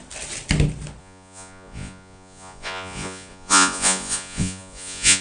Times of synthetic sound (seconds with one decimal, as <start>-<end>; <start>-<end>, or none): 1.0-5.2